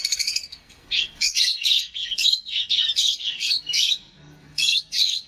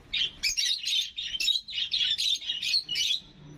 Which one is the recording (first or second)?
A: second